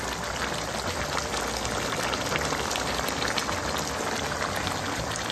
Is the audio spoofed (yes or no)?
no